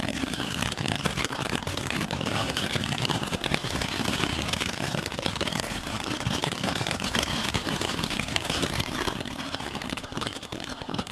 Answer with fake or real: fake